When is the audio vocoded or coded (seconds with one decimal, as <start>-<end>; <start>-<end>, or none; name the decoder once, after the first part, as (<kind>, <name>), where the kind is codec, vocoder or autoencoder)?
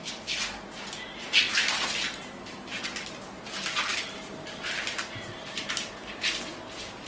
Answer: 3.9-5.3 (vocoder, BigVGAN v2)